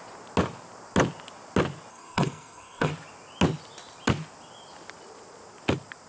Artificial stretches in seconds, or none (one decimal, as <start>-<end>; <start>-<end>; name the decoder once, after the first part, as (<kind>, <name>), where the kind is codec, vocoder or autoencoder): 1.9-2.9 (codec, SNAC)